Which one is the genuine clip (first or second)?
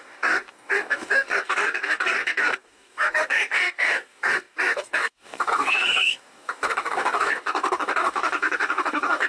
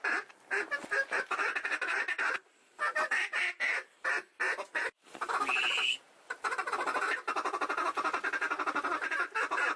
second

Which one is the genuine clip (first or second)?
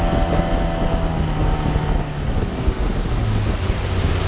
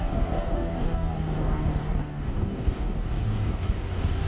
first